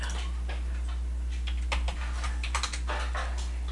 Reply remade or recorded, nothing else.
recorded